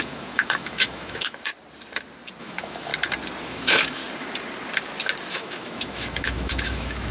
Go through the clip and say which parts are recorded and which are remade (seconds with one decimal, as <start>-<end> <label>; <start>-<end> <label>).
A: 0.0-1.5 remade; 1.5-2.4 recorded; 2.4-2.9 remade; 2.9-3.4 recorded; 3.4-4.0 remade; 4.0-5.3 recorded; 5.3-7.1 remade